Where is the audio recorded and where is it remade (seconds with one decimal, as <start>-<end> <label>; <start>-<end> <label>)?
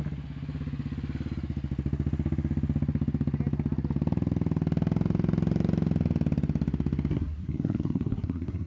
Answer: 0.0-7.1 recorded; 7.1-8.7 remade